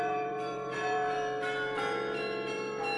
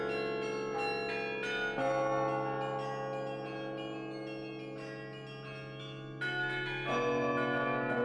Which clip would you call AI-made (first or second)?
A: first